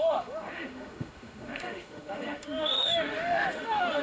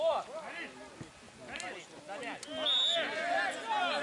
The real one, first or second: second